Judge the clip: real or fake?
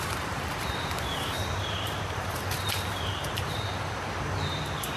fake